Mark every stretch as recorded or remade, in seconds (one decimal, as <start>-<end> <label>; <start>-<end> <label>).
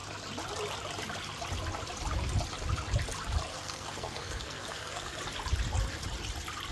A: 0.0-3.5 recorded; 3.5-5.2 remade; 5.2-6.7 recorded